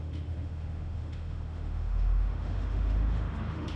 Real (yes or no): no